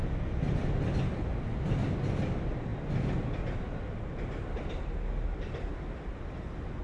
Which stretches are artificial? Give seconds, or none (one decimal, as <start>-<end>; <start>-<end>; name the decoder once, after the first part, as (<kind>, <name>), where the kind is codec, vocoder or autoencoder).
none